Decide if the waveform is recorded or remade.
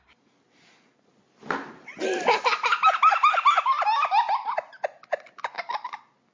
recorded